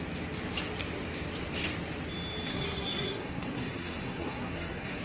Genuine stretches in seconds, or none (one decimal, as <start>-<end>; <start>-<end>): 0.0-2.5